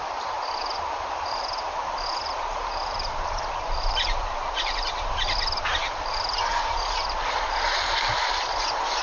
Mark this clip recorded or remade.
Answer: remade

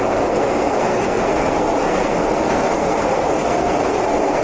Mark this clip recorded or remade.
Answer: remade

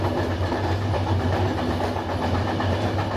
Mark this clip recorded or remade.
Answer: recorded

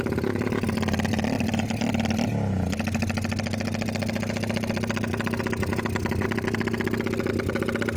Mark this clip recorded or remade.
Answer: recorded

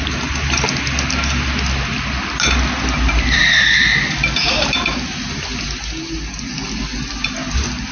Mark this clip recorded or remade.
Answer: recorded